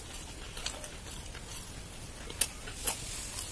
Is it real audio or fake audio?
real